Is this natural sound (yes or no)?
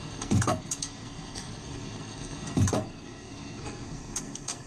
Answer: no